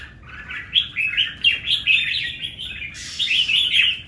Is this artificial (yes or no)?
no